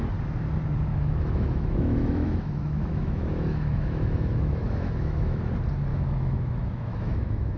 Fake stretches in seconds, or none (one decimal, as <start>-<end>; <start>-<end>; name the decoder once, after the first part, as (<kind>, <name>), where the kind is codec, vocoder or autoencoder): 0.9-5.5 (autoencoder, DAC-VAE); 5.9-7.6